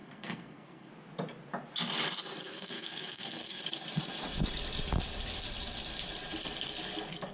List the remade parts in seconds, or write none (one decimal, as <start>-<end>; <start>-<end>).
0.0-0.9; 2.4-3.6